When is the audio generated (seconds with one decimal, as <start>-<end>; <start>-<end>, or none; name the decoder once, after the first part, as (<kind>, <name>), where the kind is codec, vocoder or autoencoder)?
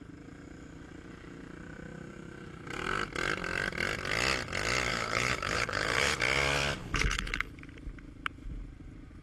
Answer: 4.9-6.2 (codec, HILCodec); 6.8-7.5